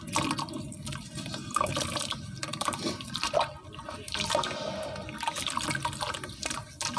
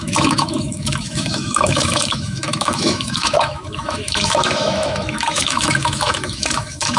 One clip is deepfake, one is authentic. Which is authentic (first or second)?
first